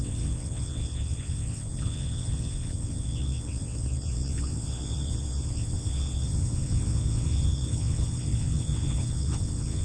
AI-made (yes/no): yes